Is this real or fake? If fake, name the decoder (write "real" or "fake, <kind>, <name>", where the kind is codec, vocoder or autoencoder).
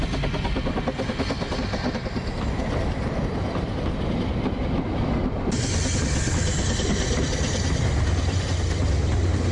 real